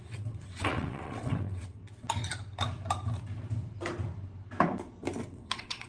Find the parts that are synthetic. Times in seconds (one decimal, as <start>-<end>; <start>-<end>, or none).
0.0-1.8; 5.3-5.9